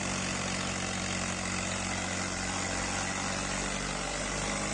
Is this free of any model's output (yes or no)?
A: yes